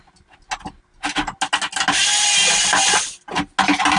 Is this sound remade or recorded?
recorded